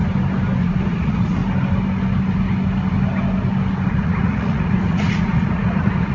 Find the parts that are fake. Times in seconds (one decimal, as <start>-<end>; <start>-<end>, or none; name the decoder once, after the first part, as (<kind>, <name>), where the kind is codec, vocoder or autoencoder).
0.6-1.4 (vocoder, Vocos); 3.9-6.1